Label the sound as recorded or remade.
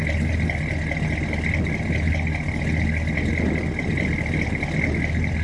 recorded